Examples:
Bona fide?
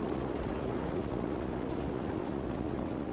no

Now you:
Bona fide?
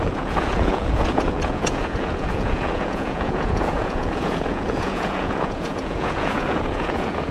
no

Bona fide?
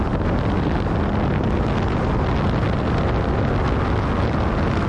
yes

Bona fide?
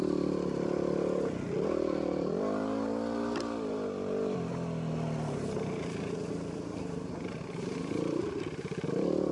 yes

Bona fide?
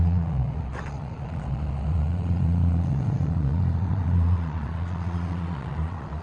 no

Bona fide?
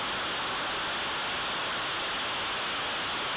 yes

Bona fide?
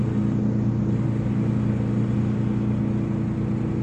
yes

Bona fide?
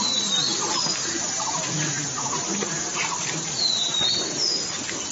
yes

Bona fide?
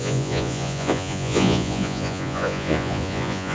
no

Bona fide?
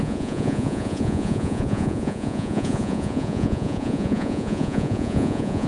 no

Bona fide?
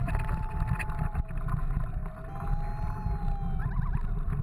yes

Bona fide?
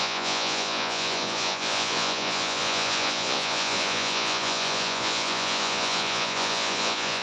no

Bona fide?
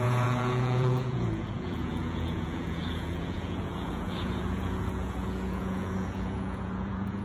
no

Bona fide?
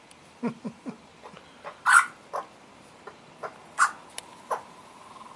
yes